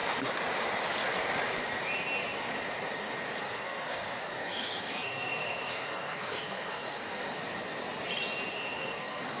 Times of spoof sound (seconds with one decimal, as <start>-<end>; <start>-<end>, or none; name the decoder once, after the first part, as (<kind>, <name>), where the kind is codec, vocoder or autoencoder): 3.4-7.4 (codec, SNAC); 8.5-9.4